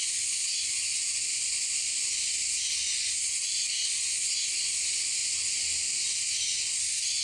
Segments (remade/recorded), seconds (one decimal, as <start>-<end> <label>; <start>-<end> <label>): 0.0-3.8 recorded; 3.8-4.3 remade; 4.3-7.2 recorded